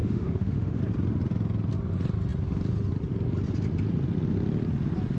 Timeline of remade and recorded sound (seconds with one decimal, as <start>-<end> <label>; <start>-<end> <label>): 0.0-0.8 remade; 0.8-5.2 recorded